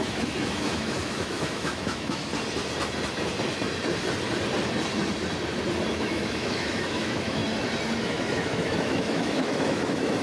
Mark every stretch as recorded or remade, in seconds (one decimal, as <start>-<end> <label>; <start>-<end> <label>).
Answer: 0.0-2.3 remade; 2.3-5.9 recorded; 5.9-7.4 remade; 7.4-8.0 recorded; 8.0-10.2 remade